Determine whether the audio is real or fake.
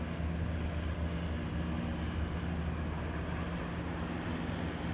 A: real